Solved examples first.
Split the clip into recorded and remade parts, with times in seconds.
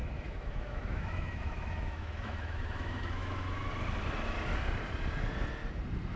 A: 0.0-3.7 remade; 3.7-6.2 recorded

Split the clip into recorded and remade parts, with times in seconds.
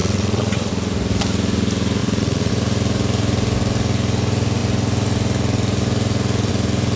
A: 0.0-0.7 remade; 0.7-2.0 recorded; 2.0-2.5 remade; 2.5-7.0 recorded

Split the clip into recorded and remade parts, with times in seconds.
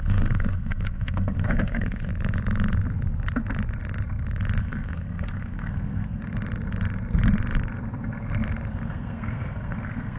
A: 0.0-2.1 remade; 2.1-4.6 recorded; 4.6-6.2 remade; 6.2-8.7 recorded; 8.7-10.2 remade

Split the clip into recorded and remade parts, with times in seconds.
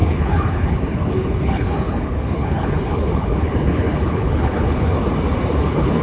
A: 0.0-4.9 remade; 4.9-5.5 recorded; 5.5-6.0 remade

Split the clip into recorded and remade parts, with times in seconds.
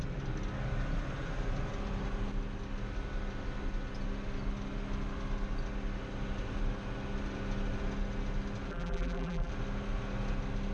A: 0.0-8.7 recorded; 8.7-9.5 remade; 9.5-10.7 recorded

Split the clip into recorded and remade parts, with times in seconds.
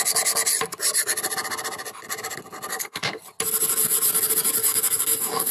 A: 0.0-2.7 recorded; 2.7-3.2 remade; 3.2-4.6 recorded; 4.6-5.5 remade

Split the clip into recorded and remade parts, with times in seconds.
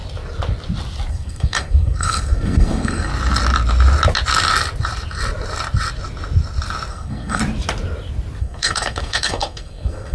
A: 0.0-1.1 recorded; 1.1-3.1 remade; 3.1-6.9 recorded; 6.9-7.4 remade; 7.4-8.4 recorded; 8.4-10.1 remade